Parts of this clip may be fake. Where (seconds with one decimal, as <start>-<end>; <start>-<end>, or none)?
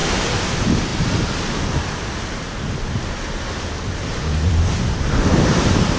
0.0-0.5